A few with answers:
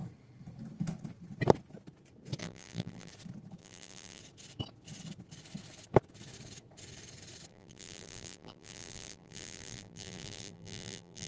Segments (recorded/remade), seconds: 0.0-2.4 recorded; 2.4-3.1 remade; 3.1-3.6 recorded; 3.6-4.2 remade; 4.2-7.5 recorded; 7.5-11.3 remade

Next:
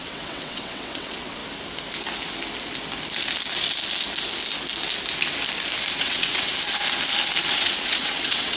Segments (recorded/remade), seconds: 0.0-1.4 remade; 1.4-6.0 recorded; 6.0-6.5 remade; 6.5-7.5 recorded; 7.5-8.6 remade